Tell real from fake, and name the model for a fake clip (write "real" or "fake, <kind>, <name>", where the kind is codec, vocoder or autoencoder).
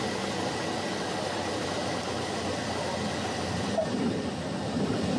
real